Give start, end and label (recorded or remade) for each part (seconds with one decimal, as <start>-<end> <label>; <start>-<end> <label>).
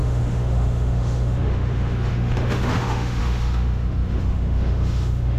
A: 0.0-5.4 remade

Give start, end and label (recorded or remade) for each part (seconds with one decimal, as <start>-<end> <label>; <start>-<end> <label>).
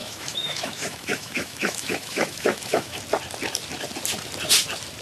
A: 0.0-3.0 remade; 3.0-5.0 recorded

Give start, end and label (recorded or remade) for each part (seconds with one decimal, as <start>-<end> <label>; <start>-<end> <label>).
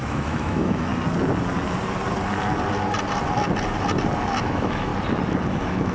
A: 0.0-0.9 remade; 0.9-4.4 recorded; 4.4-4.9 remade; 4.9-5.5 recorded; 5.5-5.9 remade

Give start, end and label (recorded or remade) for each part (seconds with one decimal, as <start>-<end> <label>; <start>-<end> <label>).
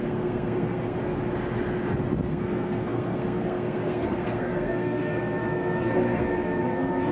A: 0.0-1.0 remade; 1.0-2.3 recorded; 2.3-7.1 remade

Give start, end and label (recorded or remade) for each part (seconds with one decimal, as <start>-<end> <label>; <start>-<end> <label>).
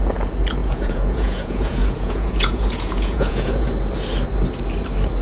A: 0.0-0.6 recorded; 0.6-3.7 remade; 3.7-5.2 recorded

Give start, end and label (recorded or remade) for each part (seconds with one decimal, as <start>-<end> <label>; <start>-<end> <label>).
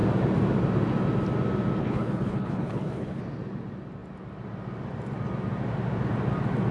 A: 0.0-1.8 recorded; 1.8-3.2 remade; 3.2-6.7 recorded